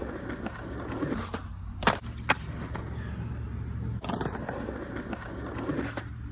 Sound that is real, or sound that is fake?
real